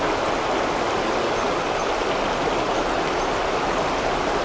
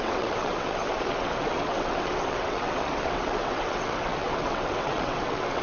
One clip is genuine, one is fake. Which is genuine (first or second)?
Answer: first